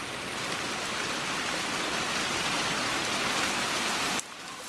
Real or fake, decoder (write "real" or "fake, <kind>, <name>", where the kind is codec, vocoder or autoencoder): real